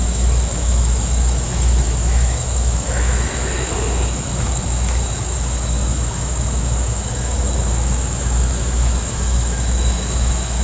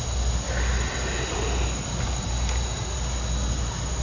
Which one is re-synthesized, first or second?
first